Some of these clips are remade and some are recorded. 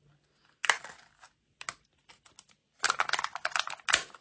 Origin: recorded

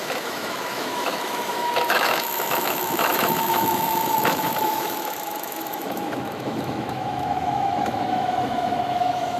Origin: remade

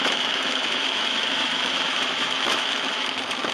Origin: remade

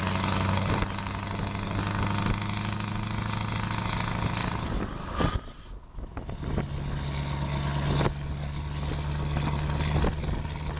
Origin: recorded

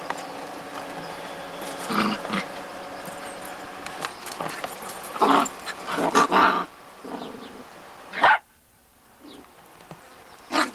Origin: recorded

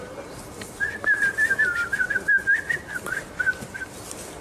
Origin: recorded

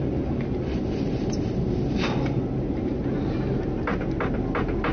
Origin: recorded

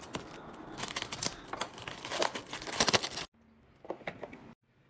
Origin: recorded